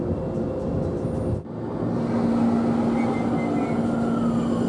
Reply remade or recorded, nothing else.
recorded